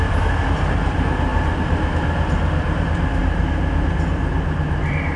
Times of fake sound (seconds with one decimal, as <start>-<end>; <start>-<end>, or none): none

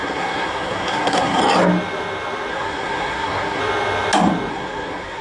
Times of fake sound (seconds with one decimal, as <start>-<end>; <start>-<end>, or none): 0.0-1.4; 2.5-3.6; 4.5-5.2

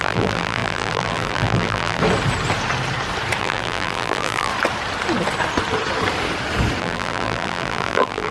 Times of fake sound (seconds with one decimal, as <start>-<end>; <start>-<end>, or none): 0.0-2.0; 3.4-4.5; 6.8-8.3

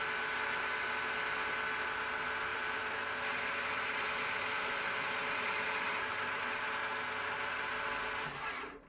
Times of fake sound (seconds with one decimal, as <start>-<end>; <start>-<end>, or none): 2.5-6.9